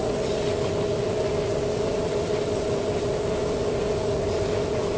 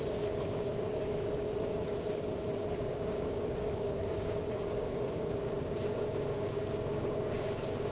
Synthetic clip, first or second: second